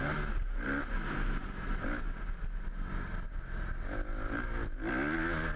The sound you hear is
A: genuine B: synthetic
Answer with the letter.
A